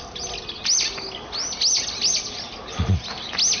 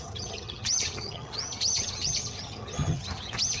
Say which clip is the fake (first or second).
second